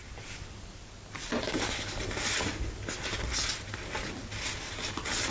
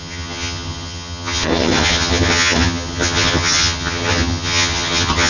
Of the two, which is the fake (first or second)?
second